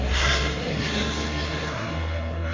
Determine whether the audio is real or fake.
fake